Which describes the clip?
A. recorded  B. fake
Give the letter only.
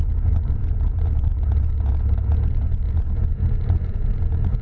B